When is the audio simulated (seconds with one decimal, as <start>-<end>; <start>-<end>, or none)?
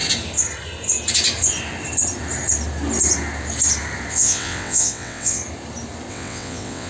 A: 4.1-5.4; 6.1-6.9